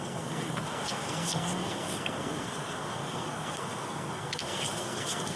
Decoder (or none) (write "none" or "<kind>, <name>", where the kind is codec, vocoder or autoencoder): codec, SNAC